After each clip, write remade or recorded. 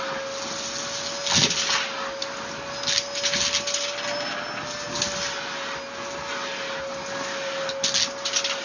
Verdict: recorded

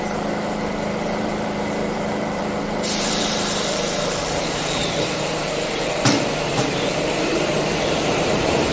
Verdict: remade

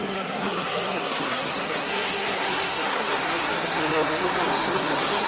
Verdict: remade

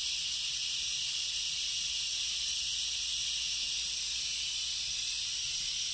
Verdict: recorded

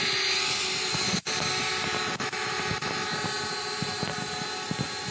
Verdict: recorded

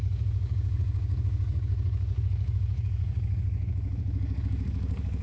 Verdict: remade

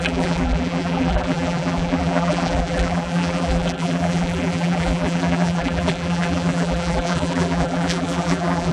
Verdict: remade